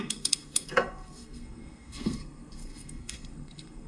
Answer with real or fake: fake